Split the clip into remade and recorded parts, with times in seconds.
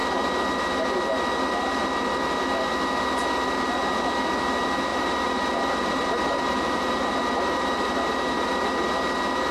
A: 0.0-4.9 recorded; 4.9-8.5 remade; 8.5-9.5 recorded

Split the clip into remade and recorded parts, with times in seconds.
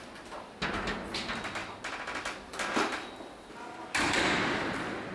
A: 0.0-5.1 recorded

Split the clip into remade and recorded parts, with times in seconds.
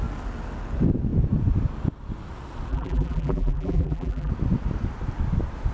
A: 0.0-2.7 recorded; 2.7-4.3 remade; 4.3-5.7 recorded